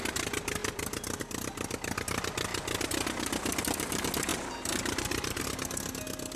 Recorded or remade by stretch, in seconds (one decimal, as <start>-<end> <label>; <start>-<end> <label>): 0.0-0.6 recorded; 0.6-1.2 remade; 1.2-4.3 recorded; 4.3-5.4 remade; 5.4-6.4 recorded